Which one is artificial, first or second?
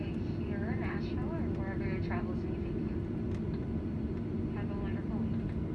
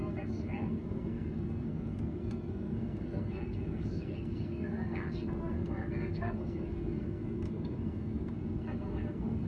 second